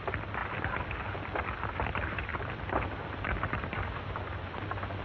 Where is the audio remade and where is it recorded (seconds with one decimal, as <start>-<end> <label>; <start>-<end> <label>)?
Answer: 0.0-0.4 recorded; 0.4-1.0 remade; 1.0-2.3 recorded; 2.3-4.6 remade; 4.6-5.0 recorded

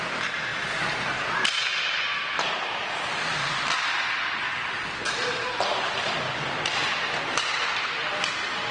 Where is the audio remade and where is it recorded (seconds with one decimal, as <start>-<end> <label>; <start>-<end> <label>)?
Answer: 0.0-0.5 recorded; 0.5-3.0 remade; 3.0-6.8 recorded; 6.8-8.1 remade; 8.1-8.7 recorded

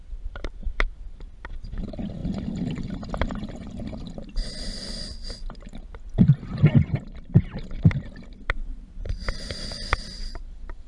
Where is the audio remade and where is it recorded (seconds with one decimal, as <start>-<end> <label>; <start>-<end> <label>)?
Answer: 0.0-2.2 recorded; 2.2-2.8 remade; 2.8-10.9 recorded

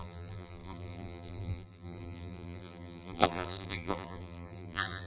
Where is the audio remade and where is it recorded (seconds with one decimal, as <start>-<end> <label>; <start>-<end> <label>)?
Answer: 0.0-5.1 remade